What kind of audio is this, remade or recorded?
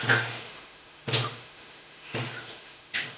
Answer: remade